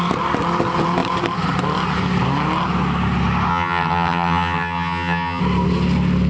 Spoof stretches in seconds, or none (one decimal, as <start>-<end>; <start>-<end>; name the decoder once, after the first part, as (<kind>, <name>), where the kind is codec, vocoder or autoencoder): 3.5-5.4 (vocoder, HiFi-GAN)